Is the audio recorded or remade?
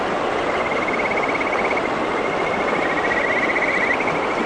recorded